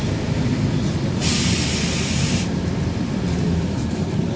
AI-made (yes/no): yes